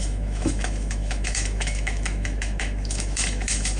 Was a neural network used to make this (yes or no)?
yes